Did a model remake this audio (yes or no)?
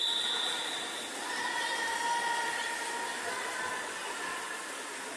no